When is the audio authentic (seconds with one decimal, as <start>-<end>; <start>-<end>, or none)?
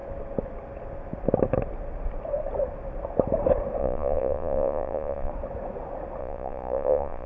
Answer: 0.0-3.8; 5.3-6.2